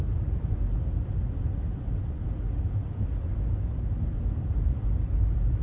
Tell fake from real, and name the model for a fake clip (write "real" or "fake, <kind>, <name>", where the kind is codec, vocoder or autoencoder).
real